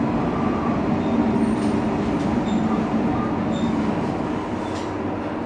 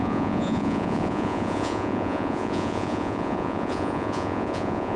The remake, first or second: second